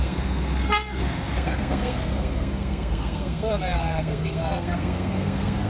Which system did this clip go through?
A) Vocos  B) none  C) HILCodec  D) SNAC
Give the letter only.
D